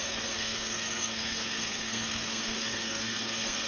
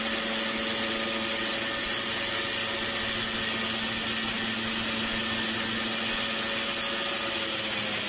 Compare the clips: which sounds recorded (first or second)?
second